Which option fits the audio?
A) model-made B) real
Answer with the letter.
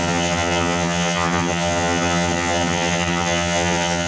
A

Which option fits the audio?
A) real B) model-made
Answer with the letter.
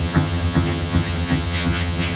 B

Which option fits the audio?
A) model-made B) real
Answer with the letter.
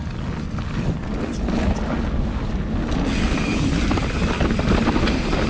B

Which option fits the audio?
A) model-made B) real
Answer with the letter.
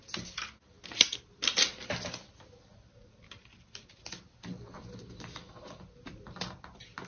B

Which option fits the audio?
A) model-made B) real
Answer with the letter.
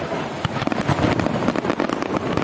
B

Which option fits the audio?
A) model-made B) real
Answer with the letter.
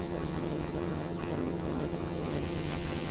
A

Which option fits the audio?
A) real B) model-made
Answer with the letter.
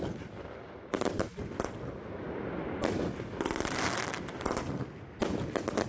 A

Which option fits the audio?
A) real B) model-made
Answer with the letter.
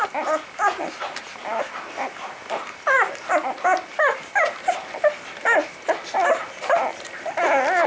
A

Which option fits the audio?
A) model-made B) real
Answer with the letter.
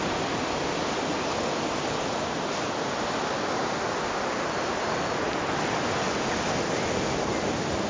B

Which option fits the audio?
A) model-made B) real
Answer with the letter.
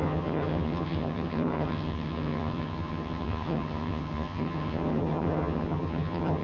A